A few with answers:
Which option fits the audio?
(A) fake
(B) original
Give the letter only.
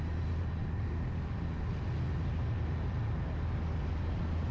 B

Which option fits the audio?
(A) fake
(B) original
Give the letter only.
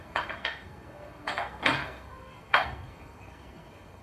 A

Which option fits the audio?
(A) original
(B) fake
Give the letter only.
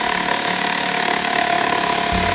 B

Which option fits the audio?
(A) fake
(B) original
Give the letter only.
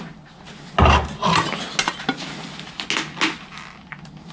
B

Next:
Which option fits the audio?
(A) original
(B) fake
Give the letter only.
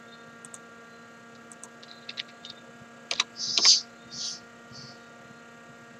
A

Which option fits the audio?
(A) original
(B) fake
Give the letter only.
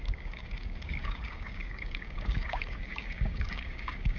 B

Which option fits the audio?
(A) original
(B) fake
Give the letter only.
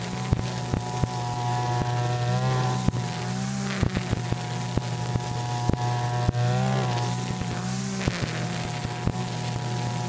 A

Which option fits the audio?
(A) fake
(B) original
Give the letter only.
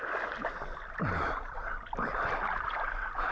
B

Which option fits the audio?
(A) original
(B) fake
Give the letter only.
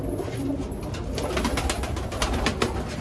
A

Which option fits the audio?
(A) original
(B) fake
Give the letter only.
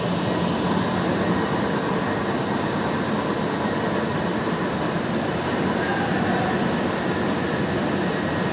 A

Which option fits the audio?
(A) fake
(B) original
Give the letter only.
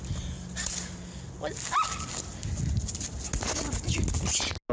B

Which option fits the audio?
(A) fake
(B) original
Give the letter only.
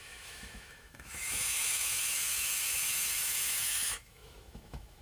A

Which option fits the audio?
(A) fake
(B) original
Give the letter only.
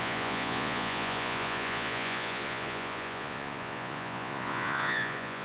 A